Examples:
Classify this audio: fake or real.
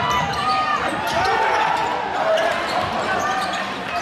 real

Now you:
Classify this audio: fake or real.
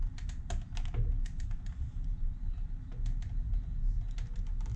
real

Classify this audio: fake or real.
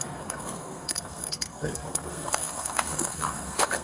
fake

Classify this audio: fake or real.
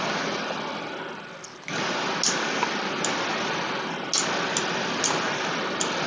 real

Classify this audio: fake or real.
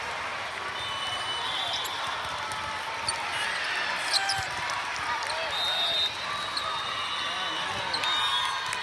real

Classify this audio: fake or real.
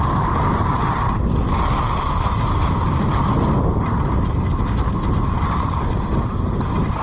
real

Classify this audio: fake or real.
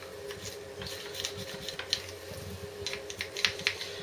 real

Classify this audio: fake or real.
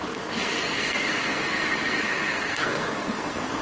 fake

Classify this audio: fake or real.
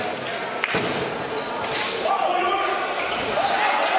real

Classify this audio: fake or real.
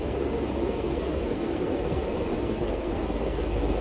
fake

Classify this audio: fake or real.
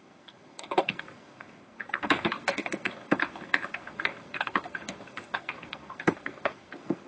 fake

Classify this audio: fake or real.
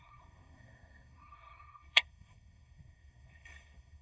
fake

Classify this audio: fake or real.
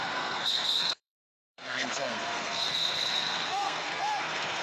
fake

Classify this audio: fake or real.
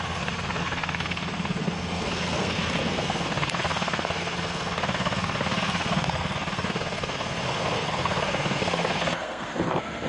fake